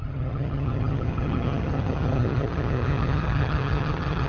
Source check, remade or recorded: remade